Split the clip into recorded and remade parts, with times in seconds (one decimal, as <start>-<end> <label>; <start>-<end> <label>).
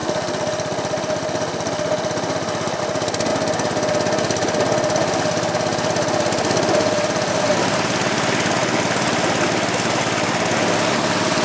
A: 0.0-11.4 recorded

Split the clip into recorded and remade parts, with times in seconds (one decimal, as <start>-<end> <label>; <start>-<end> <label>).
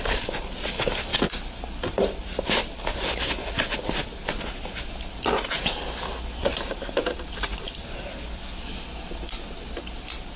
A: 0.0-6.4 recorded; 6.4-8.1 remade; 8.1-10.4 recorded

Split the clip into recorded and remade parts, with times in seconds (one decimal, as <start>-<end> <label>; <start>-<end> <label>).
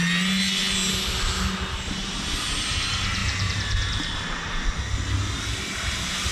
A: 0.0-3.2 recorded; 3.2-4.5 remade; 4.5-6.3 recorded